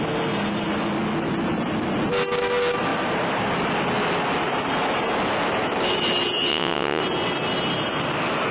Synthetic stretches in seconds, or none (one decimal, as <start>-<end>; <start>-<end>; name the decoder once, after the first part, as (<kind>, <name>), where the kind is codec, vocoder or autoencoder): 6.5-7.0 (vocoder, WaveNeXt)